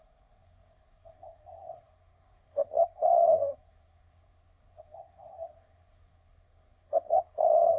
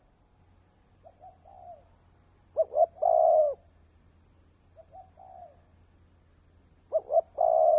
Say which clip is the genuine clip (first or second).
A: second